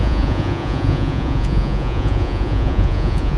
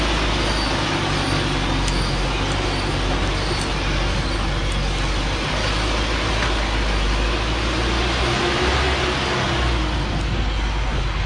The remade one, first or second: first